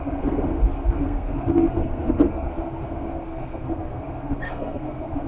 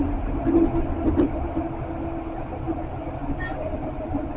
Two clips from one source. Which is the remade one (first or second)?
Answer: first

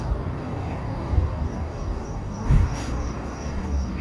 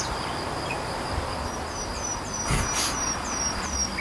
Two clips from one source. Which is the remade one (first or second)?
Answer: first